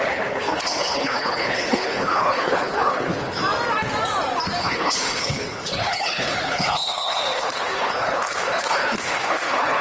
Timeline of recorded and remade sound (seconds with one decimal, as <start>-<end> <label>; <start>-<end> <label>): 0.0-3.4 remade; 3.4-4.6 recorded; 4.6-9.8 remade